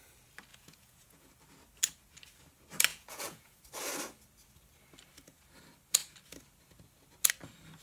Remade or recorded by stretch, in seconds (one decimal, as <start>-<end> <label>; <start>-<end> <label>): 0.0-0.5 recorded; 0.5-1.3 remade; 1.3-2.9 recorded; 2.9-3.6 remade; 3.6-7.8 recorded